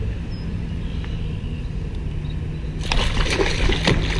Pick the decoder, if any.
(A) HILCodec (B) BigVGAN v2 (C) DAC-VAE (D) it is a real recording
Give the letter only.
D